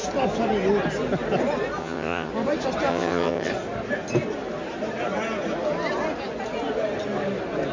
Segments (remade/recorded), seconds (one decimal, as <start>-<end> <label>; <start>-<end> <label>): 0.0-1.8 recorded; 1.8-2.3 remade; 2.3-2.9 recorded; 2.9-3.5 remade; 3.5-7.7 recorded